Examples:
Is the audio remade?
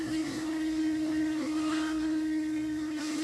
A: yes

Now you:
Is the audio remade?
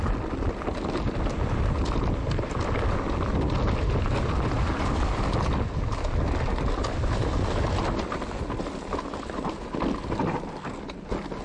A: no